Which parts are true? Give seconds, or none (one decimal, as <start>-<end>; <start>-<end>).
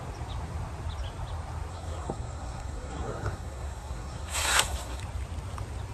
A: 0.0-1.7; 5.0-5.9